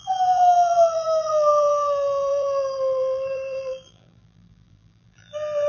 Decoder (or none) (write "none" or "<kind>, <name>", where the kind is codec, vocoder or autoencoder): vocoder, BigVGAN v2